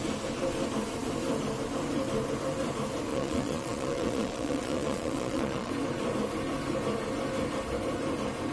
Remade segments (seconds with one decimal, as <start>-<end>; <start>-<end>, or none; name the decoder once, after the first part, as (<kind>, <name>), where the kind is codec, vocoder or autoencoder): 3.1-5.7 (vocoder, Vocos)